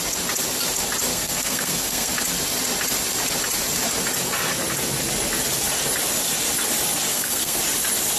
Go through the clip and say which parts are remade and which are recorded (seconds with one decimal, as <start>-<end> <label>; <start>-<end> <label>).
0.0-1.1 recorded; 1.1-2.1 remade; 2.1-7.1 recorded; 7.1-7.6 remade; 7.6-8.2 recorded